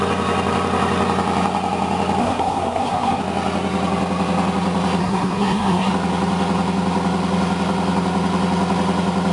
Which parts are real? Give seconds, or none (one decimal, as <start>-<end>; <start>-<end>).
0.0-2.2; 3.2-5.0; 5.9-9.3